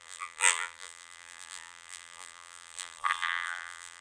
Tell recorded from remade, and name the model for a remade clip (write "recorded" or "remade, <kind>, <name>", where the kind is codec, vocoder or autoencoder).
remade, vocoder, BigVGAN v2